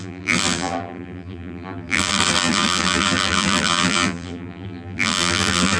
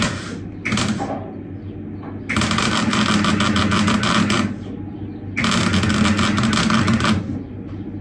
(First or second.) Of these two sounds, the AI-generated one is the first